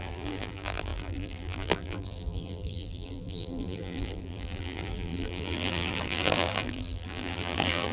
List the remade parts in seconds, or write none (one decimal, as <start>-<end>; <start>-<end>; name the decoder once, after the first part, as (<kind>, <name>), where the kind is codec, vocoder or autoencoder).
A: 0.0-7.9 (vocoder, BigVGAN v2)